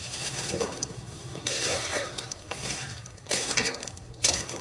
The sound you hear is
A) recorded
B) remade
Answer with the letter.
B